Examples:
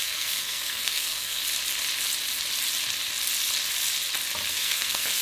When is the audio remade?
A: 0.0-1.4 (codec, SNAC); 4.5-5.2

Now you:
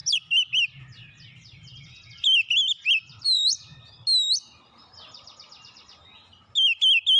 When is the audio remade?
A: none

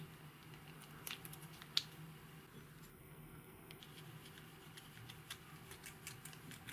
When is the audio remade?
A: 2.9-3.8 (codec, SNAC)

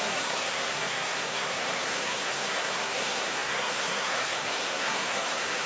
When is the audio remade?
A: 0.0-5.7 (codec, SNAC)

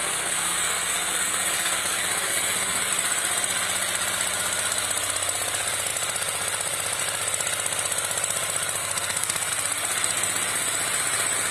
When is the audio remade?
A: 0.0-2.9 (codec, SNAC); 8.8-9.5

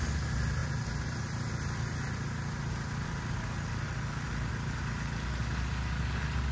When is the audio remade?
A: none